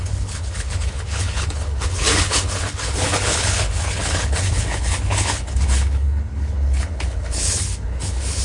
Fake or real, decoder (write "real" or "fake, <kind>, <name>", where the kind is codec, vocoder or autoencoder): fake, codec, HILCodec